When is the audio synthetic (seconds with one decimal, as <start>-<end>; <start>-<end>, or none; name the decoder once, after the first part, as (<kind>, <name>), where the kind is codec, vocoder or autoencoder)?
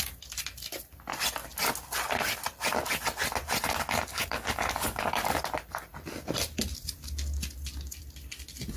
4.1-5.4 (codec, DAC)